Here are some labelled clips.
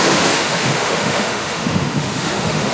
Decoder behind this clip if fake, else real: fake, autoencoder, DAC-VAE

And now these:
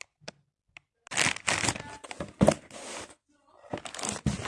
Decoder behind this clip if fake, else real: real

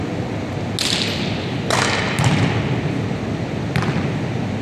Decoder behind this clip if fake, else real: real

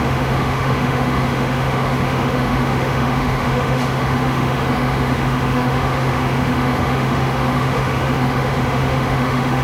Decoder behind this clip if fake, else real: fake, autoencoder, DAC-VAE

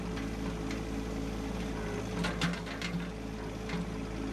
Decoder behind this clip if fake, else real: real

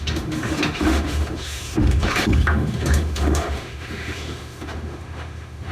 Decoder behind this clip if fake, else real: fake, autoencoder, DAC-VAE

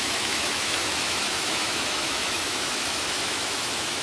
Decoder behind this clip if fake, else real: fake, autoencoder, DAC-VAE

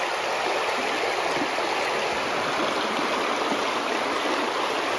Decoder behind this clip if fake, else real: real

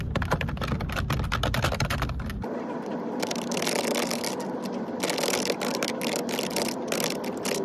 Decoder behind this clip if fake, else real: real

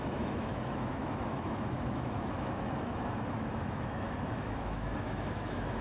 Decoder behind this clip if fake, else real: fake, autoencoder, DAC-VAE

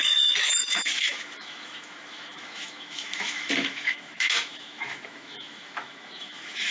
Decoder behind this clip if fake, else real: fake, autoencoder, DAC-VAE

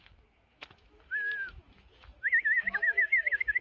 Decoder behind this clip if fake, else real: fake, autoencoder, DAC-VAE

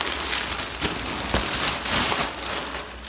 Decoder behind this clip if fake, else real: real